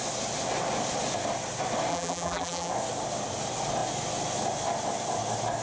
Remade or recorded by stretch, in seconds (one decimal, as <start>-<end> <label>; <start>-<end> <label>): 0.0-1.9 recorded; 1.9-2.7 remade; 2.7-5.6 recorded